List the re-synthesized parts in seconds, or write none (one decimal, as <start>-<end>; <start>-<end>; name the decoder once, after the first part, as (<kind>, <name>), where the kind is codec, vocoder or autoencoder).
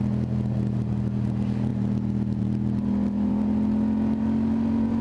none